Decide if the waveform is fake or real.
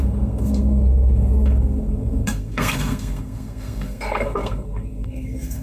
fake